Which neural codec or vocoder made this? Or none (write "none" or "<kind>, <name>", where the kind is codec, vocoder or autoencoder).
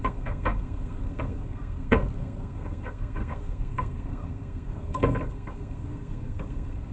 codec, SNAC